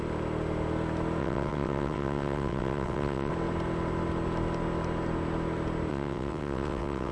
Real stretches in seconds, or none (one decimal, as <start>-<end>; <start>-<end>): 0.0-1.2; 3.3-5.9